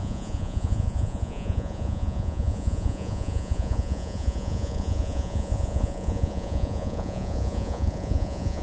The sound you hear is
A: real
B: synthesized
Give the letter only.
B